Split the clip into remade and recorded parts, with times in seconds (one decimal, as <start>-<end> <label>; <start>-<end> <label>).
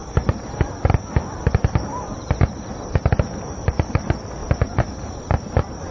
0.0-5.9 recorded